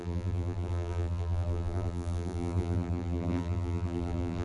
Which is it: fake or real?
fake